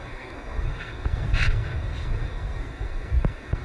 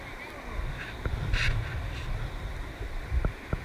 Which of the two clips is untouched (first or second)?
second